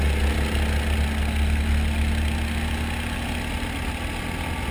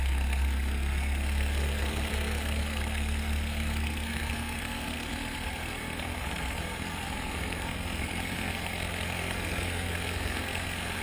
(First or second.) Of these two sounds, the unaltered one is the first